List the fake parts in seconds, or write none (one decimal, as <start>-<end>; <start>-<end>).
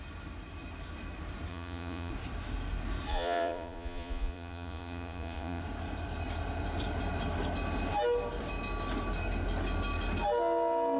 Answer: 1.5-2.1; 3.1-5.6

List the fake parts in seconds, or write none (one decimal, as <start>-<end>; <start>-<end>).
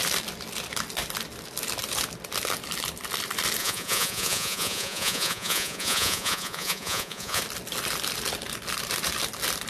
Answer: 3.6-7.4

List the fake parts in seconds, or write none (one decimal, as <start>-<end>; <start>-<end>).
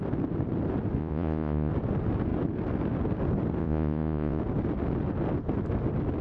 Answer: 1.0-1.7; 3.6-4.4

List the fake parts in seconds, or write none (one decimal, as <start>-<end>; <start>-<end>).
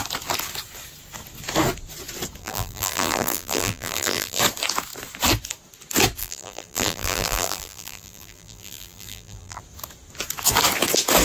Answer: 2.4-4.4; 6.2-9.6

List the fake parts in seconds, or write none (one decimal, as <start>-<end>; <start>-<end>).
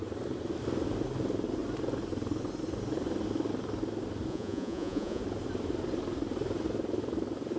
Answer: 4.3-5.2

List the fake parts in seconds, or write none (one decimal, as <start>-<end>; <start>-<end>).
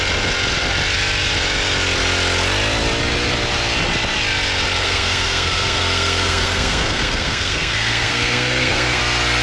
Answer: 4.8-9.0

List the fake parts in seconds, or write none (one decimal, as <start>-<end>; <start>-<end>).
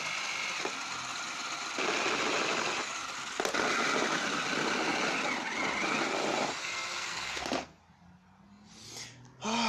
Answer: 6.6-7.8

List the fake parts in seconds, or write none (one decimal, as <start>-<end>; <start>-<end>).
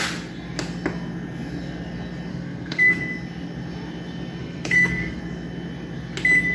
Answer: 2.3-3.0; 4.4-5.2